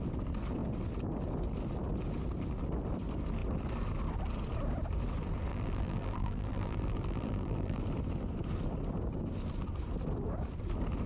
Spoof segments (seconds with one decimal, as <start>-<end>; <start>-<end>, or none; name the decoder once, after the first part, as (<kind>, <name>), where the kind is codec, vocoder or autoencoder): 5.5-7.8 (vocoder, BigVGAN v2)